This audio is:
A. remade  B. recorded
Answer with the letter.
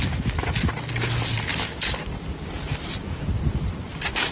B